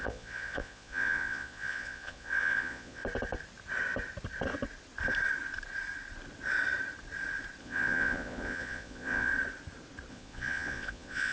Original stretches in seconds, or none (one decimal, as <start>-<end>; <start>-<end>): 3.0-7.6; 9.3-10.1